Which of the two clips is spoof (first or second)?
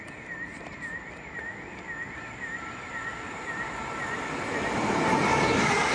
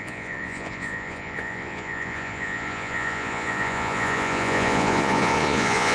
second